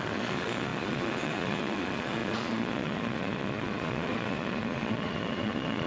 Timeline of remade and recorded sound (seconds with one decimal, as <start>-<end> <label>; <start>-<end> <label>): 0.0-5.9 remade